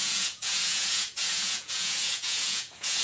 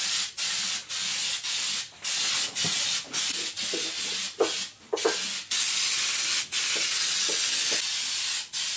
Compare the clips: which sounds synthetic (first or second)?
first